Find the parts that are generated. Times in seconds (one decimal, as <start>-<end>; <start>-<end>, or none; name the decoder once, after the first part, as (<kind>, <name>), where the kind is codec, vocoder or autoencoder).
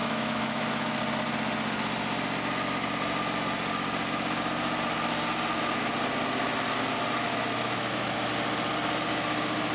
0.0-1.0 (autoencoder, DAC-VAE); 7.3-8.3